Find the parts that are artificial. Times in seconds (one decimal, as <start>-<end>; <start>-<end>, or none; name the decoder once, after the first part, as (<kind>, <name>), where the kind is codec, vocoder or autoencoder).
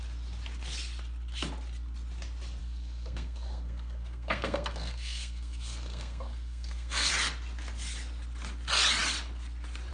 2.6-7.1 (codec, SNAC)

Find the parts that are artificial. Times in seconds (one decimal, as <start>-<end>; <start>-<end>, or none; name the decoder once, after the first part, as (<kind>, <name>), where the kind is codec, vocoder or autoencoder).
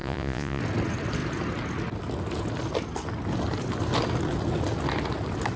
0.0-0.6 (vocoder, Vocos)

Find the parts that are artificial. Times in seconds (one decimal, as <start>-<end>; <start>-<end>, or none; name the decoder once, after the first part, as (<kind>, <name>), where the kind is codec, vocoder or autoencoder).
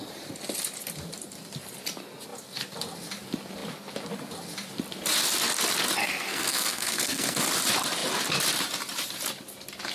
6.0-7.4 (codec, SNAC)